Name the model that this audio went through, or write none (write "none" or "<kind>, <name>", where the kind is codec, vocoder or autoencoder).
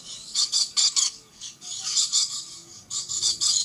codec, DAC